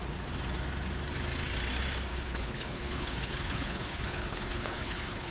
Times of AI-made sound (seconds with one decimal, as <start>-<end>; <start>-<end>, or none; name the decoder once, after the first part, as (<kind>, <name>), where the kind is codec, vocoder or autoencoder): 2.1-5.3 (codec, HILCodec)